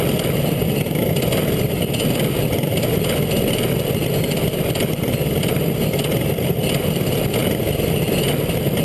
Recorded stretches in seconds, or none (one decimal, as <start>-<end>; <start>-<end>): 0.0-8.8